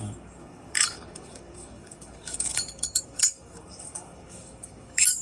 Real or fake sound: fake